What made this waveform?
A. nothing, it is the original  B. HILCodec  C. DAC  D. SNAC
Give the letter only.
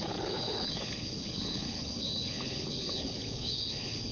B